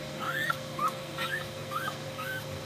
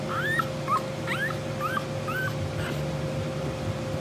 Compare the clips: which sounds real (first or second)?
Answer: second